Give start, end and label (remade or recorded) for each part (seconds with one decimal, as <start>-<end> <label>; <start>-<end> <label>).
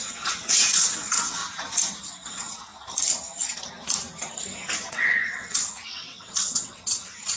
0.0-1.4 remade; 1.4-2.0 recorded; 2.0-2.7 remade; 2.7-4.9 recorded; 4.9-7.4 remade